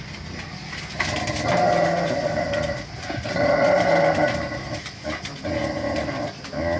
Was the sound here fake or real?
real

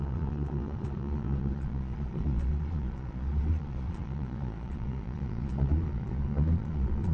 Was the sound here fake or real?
fake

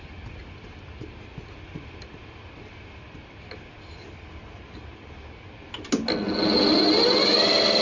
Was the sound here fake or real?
real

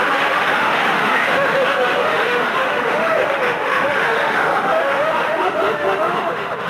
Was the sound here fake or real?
fake